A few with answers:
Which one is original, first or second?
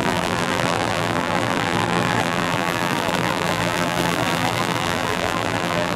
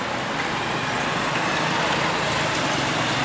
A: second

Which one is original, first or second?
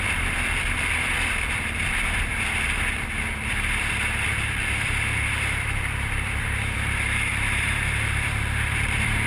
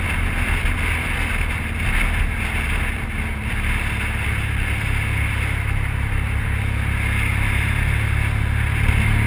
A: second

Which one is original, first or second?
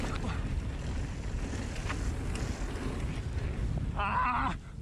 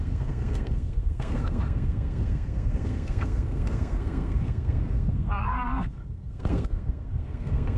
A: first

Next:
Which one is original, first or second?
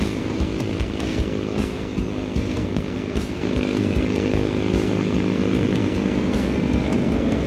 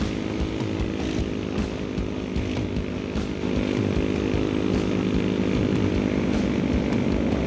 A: second